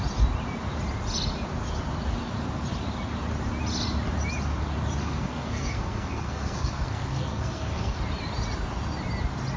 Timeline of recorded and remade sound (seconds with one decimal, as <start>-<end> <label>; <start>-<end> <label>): 0.0-5.0 recorded; 5.0-8.0 remade; 8.0-9.6 recorded

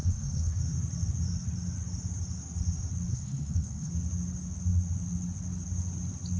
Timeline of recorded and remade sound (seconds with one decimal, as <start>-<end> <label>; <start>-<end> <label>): 0.0-0.6 remade; 0.6-3.1 recorded; 3.1-3.9 remade; 3.9-6.4 recorded

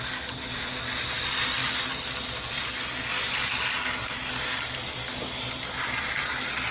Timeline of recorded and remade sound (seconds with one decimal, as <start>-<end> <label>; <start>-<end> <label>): 0.0-6.7 recorded

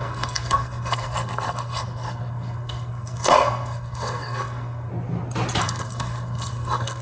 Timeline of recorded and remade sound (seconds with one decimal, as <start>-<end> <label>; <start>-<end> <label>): 0.0-4.9 remade; 4.9-5.6 recorded; 5.6-7.0 remade

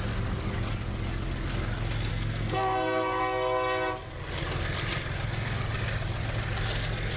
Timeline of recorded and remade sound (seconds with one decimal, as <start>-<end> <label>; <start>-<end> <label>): 0.0-2.1 recorded; 2.1-3.2 remade; 3.2-7.2 recorded

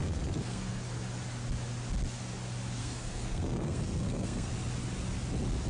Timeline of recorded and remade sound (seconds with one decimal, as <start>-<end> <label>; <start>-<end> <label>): 0.0-0.8 remade; 0.8-2.8 recorded; 2.8-4.5 remade; 4.5-5.7 recorded

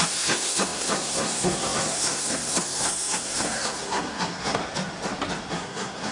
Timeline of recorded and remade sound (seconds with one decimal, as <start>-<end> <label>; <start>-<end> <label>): 0.0-4.6 remade; 4.6-5.5 recorded; 5.5-6.1 remade

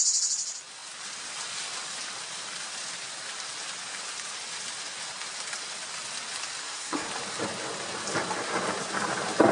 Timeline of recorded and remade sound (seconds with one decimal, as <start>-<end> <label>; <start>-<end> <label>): 0.0-6.6 recorded; 6.6-7.1 remade; 7.1-9.5 recorded